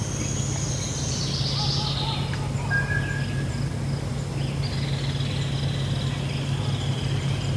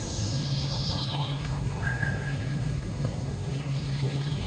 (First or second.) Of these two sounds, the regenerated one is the second